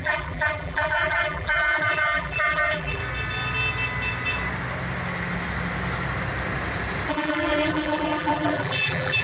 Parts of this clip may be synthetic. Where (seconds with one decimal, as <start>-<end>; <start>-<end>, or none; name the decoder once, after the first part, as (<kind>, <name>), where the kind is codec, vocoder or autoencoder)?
0.0-3.0 (vocoder, BigVGAN v2); 7.1-9.2